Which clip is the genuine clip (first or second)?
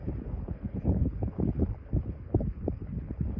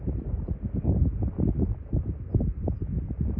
second